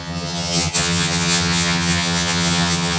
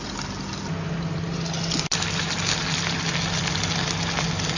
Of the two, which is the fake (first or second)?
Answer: first